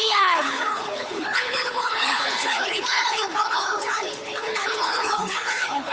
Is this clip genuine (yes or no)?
no